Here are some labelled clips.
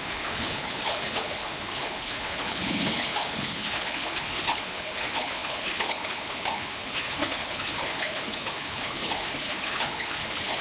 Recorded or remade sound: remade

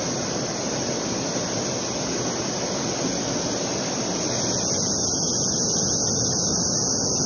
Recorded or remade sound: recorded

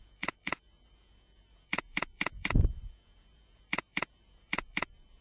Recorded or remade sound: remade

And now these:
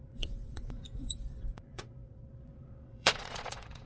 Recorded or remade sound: remade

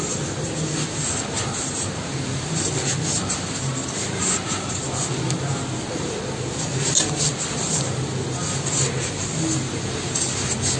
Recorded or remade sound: recorded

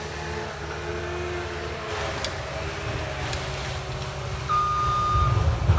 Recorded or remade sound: recorded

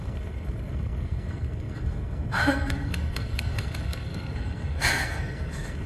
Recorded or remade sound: remade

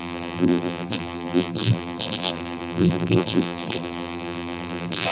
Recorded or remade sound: remade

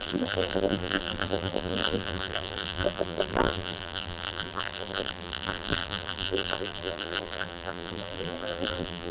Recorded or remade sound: remade